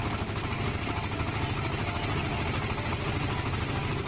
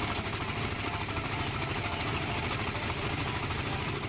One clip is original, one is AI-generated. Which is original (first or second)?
first